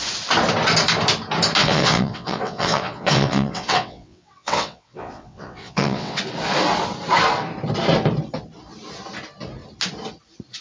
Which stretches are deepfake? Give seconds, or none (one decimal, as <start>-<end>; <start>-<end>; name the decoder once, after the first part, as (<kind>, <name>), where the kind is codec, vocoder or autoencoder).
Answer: 1.6-6.2 (vocoder, WaveNeXt)